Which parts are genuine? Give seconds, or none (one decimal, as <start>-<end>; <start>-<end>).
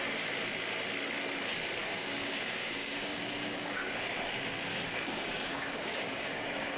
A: 0.0-1.8; 4.1-4.7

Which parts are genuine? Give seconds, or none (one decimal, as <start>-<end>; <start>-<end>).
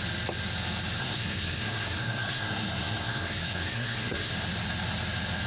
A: 0.0-1.0; 4.3-5.5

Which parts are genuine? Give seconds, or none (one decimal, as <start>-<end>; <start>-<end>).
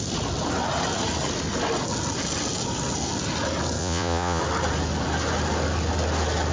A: 0.0-3.8; 4.4-6.5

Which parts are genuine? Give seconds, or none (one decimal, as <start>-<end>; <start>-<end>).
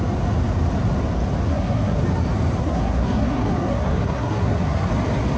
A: 0.0-1.5; 2.0-2.6; 4.9-5.4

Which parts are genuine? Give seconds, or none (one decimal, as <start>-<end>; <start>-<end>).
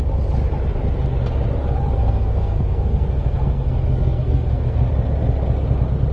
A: 0.0-2.0; 4.9-6.1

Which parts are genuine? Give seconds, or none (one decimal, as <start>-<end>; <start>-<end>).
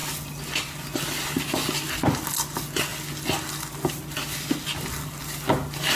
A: 0.0-6.0